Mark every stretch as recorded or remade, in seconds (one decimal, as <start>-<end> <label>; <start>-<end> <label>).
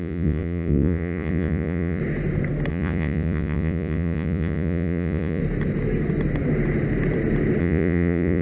0.0-2.0 remade; 2.0-2.7 recorded; 2.7-5.4 remade; 5.4-7.6 recorded; 7.6-8.4 remade